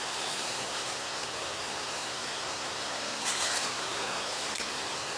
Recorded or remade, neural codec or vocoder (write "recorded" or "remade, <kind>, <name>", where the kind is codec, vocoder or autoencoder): remade, codec, SNAC